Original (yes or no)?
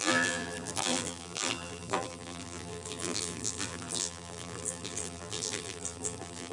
no